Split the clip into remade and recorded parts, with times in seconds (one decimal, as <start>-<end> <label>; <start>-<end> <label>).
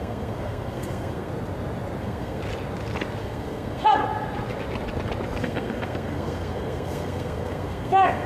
0.0-1.3 remade; 1.3-2.0 recorded; 2.0-2.4 remade; 2.4-3.2 recorded; 3.2-4.0 remade; 4.0-5.4 recorded; 5.4-8.3 remade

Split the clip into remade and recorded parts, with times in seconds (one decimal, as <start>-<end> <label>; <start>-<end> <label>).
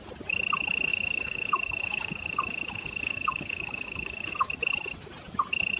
0.0-0.9 recorded; 0.9-4.3 remade; 4.3-5.8 recorded